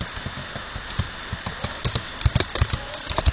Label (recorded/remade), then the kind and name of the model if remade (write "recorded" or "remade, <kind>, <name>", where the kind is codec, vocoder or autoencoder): recorded